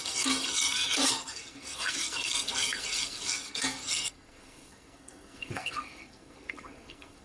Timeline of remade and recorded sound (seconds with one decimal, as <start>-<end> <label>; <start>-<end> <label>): 0.0-7.2 remade